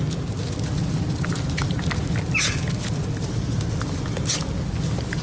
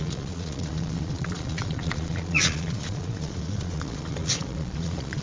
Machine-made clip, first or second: second